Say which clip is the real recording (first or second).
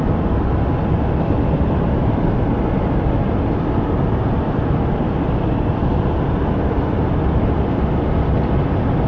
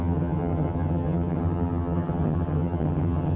first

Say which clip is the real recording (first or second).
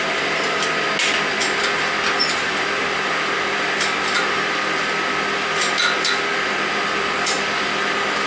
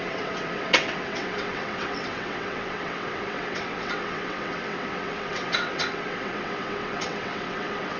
first